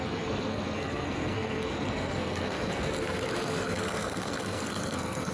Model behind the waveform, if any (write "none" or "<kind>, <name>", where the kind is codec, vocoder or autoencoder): codec, SNAC